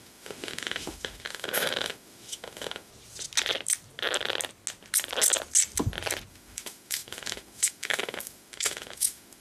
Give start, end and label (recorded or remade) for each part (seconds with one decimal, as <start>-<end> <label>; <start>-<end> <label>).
0.0-2.9 remade; 2.9-6.3 recorded; 6.3-9.4 remade